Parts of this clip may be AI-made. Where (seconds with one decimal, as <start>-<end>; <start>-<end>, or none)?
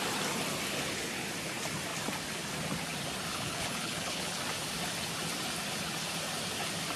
3.3-4.4